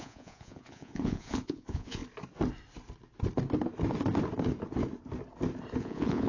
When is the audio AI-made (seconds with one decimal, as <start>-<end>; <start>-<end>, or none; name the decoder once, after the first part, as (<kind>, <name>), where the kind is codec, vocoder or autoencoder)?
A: 0.0-2.0 (vocoder, Vocos); 5.8-6.3